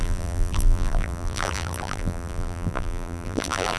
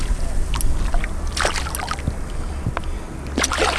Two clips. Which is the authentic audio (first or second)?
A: second